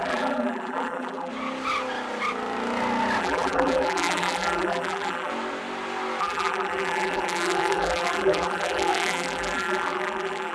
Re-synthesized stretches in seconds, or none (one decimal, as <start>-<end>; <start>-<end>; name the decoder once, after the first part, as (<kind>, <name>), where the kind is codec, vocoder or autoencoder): 0.0-1.3 (vocoder, BigVGAN v2); 3.2-5.3; 6.2-10.5